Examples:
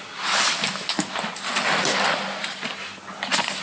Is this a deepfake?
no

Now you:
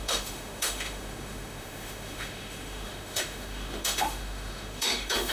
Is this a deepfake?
yes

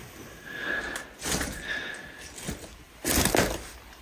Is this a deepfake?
no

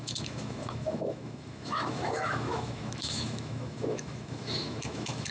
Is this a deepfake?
yes